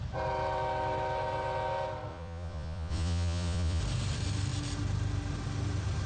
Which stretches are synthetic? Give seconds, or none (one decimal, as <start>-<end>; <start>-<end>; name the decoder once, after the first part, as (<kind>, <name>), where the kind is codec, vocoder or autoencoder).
2.1-3.8 (vocoder, Vocos)